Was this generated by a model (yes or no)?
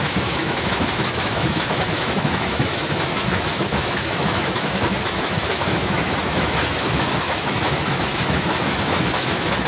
yes